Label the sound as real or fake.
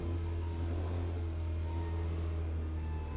real